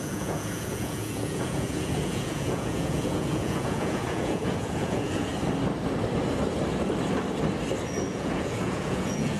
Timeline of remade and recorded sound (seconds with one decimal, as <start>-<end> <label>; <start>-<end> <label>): 0.0-5.3 remade; 5.3-8.1 recorded; 8.1-9.4 remade